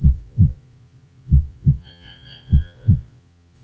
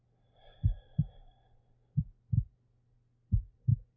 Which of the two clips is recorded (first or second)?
second